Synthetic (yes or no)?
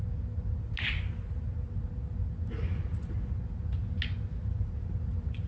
no